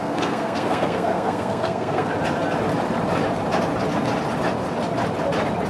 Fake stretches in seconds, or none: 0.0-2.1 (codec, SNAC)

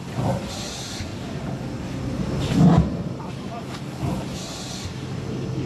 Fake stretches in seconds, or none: none

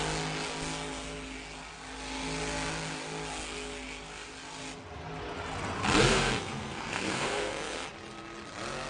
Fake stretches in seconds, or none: 6.1-7.9 (codec, SNAC)

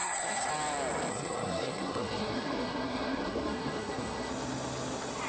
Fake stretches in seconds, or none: 0.0-0.5 (codec, SNAC); 1.1-4.3

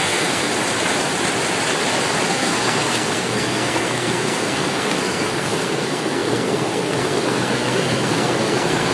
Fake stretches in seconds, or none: 0.0-0.5 (codec, SNAC); 2.3-8.9

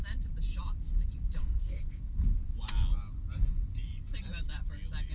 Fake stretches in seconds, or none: 1.4-2.1 (codec, SNAC)

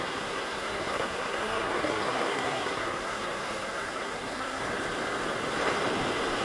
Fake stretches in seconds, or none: 0.0-4.6 (codec, SNAC)

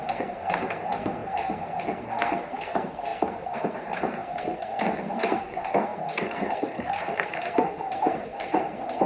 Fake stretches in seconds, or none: 0.0-9.1 (codec, SNAC)